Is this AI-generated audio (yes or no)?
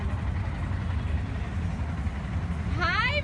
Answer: no